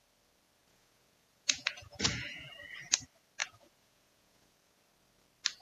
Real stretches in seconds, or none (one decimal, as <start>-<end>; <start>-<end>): 0.0-0.6; 2.5-3.4; 4.8-5.6